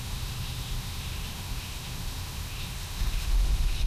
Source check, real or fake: fake